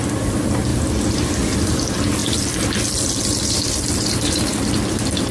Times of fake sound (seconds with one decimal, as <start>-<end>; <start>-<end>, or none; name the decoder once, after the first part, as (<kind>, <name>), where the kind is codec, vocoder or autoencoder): 0.7-1.3 (vocoder, BigVGAN v2); 2.2-5.3